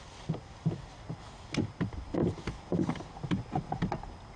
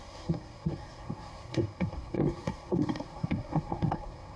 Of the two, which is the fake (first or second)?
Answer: second